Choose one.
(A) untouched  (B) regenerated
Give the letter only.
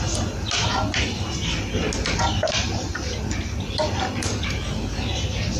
A